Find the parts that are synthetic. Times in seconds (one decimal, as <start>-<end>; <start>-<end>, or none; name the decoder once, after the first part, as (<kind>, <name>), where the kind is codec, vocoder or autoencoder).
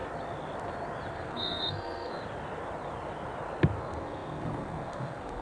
1.1-2.2 (codec, SNAC); 3.8-5.4